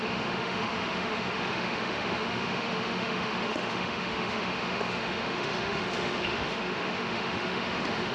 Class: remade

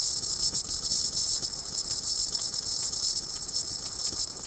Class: recorded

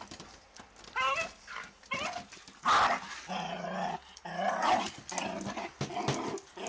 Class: recorded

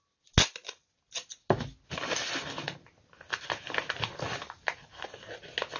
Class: recorded